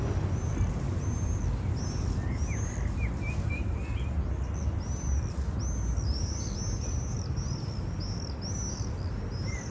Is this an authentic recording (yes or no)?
yes